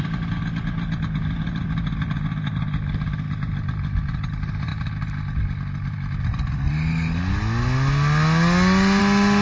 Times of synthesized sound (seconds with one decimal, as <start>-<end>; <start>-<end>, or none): none